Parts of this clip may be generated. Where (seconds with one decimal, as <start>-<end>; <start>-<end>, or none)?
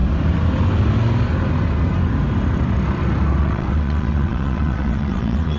3.4-5.6